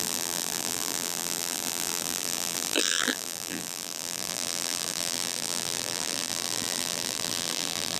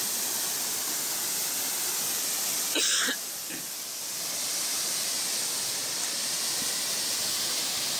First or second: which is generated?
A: first